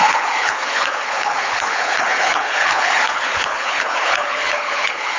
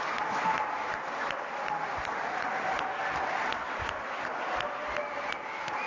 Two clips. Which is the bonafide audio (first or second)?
second